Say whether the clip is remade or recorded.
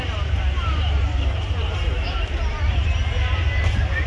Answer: remade